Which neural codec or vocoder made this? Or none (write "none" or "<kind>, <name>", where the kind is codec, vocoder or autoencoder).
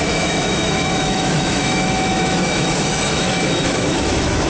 autoencoder, DAC-VAE